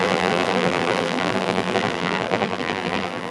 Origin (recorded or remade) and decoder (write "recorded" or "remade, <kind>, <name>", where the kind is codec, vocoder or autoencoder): remade, vocoder, BigVGAN v2